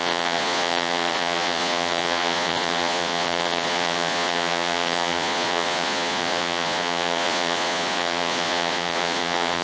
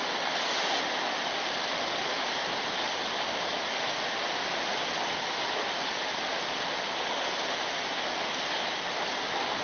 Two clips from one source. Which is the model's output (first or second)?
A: first